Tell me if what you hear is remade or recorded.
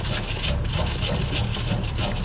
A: recorded